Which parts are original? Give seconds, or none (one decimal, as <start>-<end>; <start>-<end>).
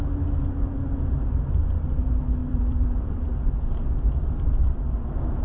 0.0-2.4; 4.7-5.4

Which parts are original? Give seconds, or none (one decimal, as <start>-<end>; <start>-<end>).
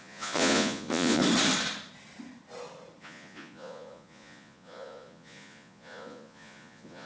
1.2-3.0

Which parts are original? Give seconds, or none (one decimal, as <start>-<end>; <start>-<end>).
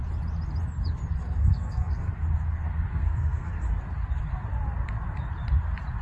0.0-1.4; 2.1-2.9; 3.5-6.0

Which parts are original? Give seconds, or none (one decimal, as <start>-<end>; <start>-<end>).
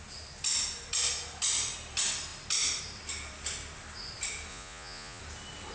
0.0-4.5; 5.2-5.7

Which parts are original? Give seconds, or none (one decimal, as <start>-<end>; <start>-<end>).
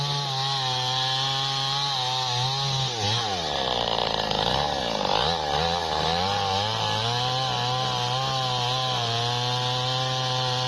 0.0-10.7